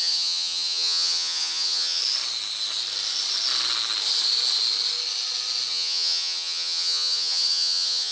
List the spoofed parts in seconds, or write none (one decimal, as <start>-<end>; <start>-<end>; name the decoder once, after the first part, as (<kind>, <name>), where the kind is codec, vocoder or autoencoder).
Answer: 0.0-2.0 (vocoder, HiFi-GAN); 5.7-8.1